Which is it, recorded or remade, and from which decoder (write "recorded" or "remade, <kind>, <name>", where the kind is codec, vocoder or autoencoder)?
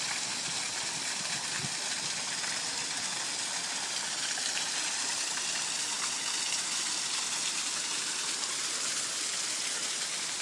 recorded